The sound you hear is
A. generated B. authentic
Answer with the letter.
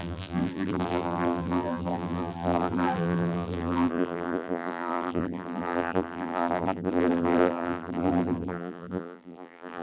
A